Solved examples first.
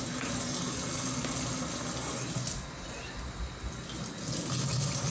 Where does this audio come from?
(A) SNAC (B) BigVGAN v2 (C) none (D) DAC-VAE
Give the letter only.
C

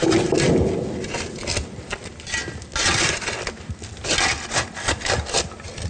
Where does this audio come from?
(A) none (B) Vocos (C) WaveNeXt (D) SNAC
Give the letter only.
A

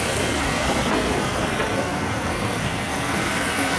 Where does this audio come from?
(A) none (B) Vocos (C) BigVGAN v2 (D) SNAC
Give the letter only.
D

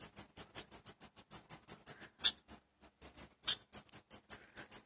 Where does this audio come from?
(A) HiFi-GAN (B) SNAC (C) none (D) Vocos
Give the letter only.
C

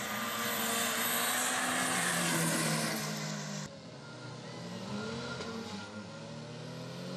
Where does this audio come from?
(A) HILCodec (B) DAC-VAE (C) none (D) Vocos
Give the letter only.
C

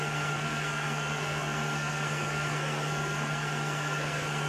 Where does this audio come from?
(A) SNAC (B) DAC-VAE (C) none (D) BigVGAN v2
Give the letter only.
A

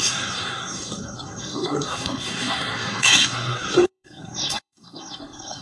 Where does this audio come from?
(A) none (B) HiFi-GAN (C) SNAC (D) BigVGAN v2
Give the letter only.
C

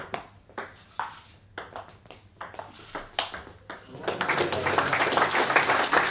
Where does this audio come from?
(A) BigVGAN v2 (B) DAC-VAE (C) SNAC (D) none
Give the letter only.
D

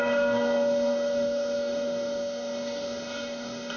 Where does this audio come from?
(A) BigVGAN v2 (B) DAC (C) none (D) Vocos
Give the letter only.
B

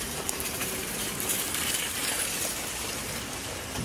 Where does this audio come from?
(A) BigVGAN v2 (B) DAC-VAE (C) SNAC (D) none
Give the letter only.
A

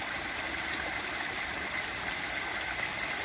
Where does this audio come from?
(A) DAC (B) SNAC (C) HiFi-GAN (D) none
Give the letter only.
D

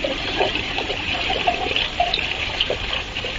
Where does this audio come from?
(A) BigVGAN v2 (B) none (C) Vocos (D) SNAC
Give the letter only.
A